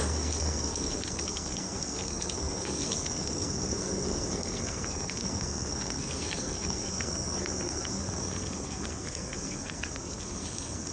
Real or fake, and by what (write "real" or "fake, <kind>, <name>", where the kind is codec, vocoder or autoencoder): fake, codec, SNAC